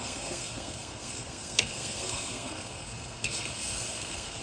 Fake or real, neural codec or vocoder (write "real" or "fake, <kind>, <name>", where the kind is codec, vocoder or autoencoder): fake, codec, SNAC